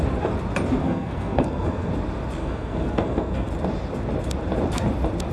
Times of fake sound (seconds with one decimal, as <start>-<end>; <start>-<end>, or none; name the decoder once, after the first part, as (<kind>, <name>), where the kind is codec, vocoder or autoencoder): 0.8-1.9 (codec, SNAC); 2.4-3.5